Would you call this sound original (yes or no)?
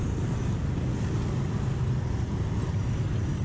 yes